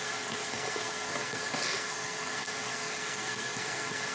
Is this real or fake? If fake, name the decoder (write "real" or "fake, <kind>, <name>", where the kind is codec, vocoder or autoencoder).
fake, codec, SNAC